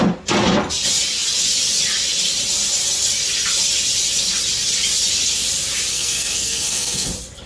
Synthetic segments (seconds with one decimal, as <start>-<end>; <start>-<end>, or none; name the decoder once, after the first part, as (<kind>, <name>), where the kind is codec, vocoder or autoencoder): 5.9-7.1 (codec, SNAC)

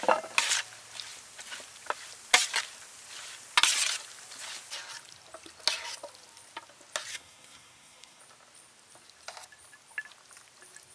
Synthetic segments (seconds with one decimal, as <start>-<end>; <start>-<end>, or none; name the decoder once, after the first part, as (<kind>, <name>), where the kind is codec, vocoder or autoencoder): 7.1-8.2 (codec, SNAC)